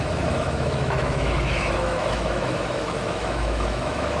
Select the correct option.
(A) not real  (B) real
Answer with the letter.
A